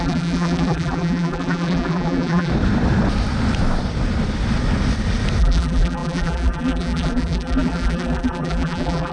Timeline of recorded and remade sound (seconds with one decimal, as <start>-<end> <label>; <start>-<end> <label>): 0.0-2.5 remade; 2.5-5.4 recorded; 5.4-9.1 remade